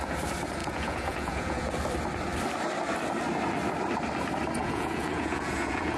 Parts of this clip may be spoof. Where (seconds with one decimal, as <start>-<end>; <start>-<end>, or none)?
0.6-1.7; 4.6-6.0

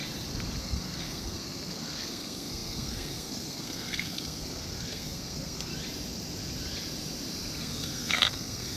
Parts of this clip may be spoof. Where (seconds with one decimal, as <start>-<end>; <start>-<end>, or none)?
0.6-5.7; 7.6-8.8

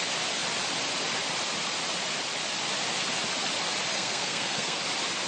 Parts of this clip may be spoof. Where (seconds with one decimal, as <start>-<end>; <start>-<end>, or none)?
3.9-4.8

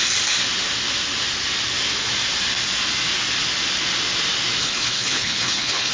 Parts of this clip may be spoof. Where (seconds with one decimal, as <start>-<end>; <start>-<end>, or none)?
4.6-5.9

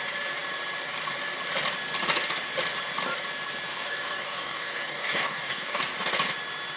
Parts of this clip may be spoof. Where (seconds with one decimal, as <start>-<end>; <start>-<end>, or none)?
3.7-5.8

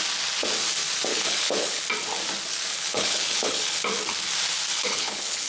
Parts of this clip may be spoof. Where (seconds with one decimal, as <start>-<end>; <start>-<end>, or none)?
1.1-1.8; 2.7-3.8; 4.7-5.5

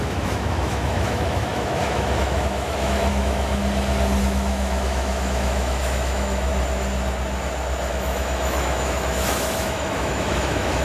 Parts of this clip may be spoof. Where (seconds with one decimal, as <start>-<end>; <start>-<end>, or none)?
0.0-3.6; 4.2-6.5; 7.9-10.8